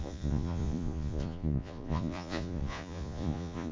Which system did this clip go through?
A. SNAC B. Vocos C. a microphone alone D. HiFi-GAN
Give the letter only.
B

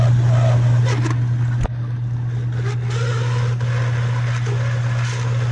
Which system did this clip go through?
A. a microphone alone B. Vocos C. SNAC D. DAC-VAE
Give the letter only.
A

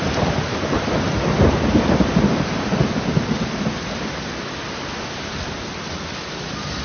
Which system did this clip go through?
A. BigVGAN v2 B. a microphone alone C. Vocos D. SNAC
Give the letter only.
B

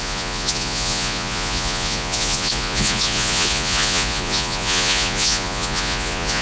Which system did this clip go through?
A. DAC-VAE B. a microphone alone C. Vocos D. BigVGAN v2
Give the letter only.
C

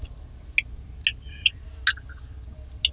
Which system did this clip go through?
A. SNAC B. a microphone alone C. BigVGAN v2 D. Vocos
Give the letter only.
B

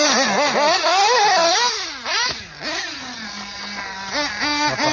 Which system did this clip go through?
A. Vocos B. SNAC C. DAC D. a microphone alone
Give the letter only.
D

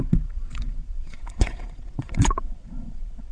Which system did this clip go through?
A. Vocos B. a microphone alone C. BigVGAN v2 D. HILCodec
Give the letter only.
A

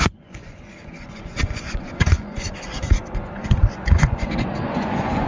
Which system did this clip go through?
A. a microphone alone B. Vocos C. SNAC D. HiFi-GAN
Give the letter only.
B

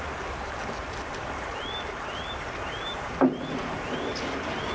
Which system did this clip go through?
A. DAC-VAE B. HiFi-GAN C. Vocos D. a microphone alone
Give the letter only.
D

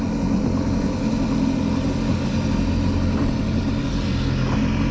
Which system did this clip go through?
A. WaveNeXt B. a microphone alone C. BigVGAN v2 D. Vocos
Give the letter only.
B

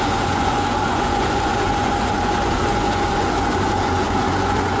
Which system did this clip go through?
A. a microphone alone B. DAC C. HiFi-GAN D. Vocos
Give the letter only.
D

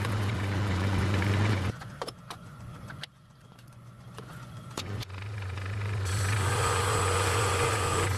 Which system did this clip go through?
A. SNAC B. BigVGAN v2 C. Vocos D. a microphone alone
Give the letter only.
C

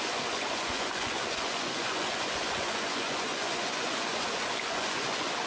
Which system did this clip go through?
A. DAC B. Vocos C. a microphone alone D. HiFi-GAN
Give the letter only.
B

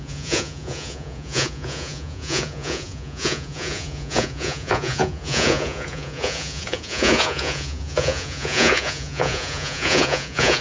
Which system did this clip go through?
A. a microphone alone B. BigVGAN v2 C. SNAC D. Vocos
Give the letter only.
D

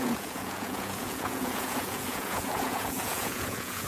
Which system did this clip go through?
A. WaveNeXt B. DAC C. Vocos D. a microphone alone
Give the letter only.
C